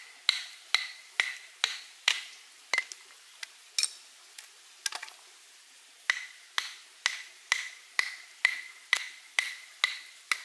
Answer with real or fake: real